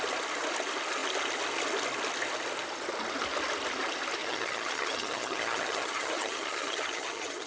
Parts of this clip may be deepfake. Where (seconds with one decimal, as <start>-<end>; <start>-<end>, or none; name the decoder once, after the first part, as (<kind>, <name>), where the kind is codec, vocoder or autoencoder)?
4.2-7.5 (vocoder, HiFi-GAN)